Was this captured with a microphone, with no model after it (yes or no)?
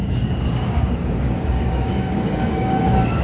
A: no